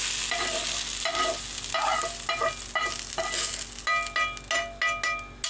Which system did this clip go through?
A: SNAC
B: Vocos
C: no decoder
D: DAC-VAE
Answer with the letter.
C